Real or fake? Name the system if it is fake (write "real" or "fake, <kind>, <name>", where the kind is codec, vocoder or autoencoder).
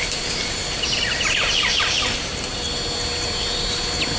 real